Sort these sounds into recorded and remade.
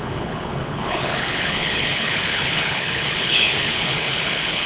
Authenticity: remade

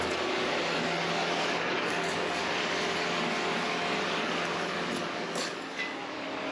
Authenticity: remade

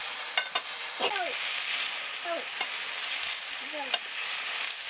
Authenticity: recorded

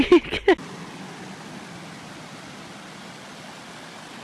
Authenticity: recorded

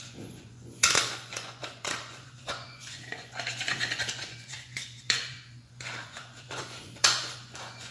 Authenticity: remade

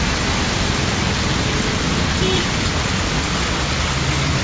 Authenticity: recorded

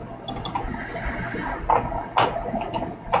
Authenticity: recorded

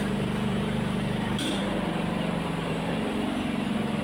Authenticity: remade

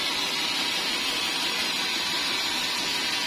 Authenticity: recorded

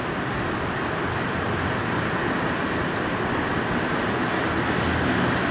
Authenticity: recorded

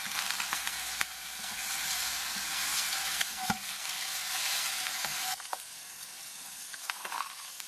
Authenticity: remade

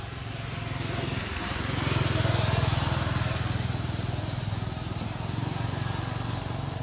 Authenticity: recorded